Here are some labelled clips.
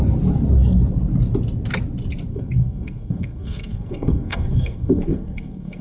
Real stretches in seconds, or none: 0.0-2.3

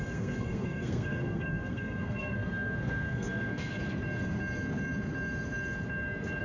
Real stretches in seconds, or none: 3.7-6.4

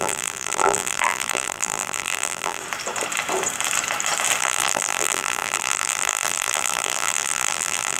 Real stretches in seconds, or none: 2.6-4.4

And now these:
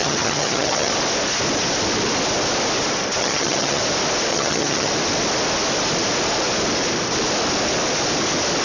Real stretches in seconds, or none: 0.9-3.2; 3.8-4.3; 4.9-8.6